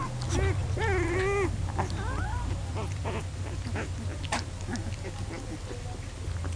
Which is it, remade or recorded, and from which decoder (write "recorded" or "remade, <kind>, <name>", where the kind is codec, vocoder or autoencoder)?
recorded